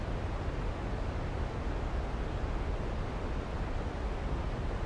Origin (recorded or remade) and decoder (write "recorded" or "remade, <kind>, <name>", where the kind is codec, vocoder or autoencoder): recorded